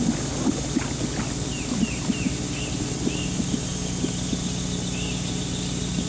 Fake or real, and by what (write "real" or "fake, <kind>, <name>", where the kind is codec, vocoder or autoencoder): real